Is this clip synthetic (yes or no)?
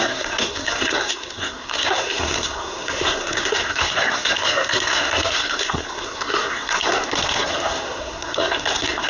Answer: yes